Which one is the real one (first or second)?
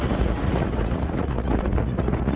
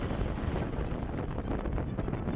second